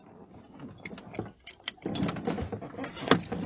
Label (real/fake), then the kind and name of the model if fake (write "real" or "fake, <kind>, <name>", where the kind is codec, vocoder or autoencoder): real